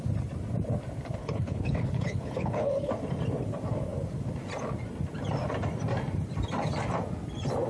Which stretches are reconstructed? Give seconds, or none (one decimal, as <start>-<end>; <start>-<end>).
1.2-2.9